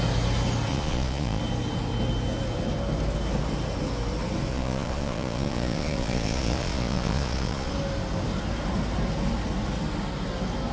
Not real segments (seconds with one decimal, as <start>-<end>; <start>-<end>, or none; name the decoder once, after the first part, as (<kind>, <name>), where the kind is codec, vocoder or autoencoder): 0.7-1.4 (vocoder, Vocos); 4.5-7.7